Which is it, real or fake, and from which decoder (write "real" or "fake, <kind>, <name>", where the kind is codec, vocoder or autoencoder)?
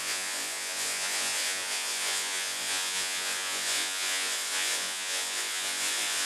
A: fake, vocoder, Vocos